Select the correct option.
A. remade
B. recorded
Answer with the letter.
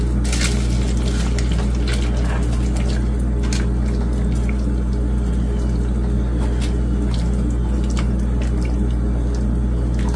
B